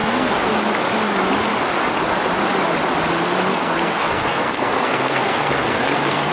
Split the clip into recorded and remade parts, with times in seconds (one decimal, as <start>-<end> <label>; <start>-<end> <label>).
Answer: 0.0-0.5 remade; 0.5-3.5 recorded; 3.5-6.3 remade